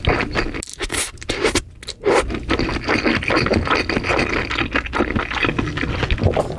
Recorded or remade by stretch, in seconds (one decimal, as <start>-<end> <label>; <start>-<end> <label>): 0.0-0.7 recorded; 0.7-1.6 remade; 1.6-6.6 recorded